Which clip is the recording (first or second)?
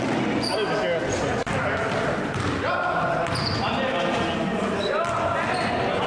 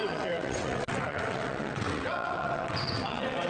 first